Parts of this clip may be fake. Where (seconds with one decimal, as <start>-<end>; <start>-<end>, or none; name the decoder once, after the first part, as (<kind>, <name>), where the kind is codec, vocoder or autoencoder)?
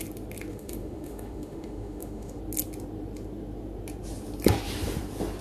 0.5-2.4 (autoencoder, DAC-VAE)